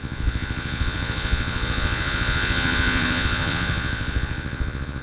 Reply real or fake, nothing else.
fake